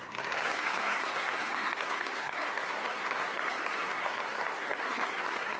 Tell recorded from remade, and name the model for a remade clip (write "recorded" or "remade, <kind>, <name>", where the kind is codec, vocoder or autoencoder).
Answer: remade, codec, SNAC